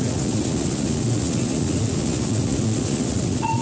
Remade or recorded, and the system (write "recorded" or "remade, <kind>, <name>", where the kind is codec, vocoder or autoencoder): remade, vocoder, Vocos